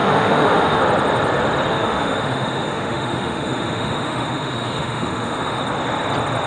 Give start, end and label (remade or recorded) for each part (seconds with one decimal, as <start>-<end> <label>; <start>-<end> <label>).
0.0-0.8 remade; 0.8-1.7 recorded; 1.7-5.6 remade; 5.6-6.5 recorded